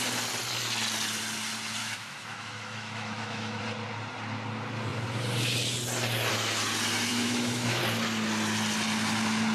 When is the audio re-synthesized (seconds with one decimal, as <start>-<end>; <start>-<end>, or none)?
1.8-3.6; 7.1-7.8